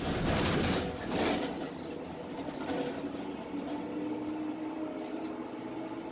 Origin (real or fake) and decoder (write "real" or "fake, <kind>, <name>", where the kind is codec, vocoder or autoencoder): real